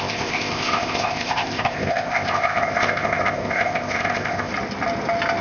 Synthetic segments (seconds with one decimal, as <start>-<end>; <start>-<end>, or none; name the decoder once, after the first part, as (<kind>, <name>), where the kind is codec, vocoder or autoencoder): 0.0-4.5 (codec, ZipCodec)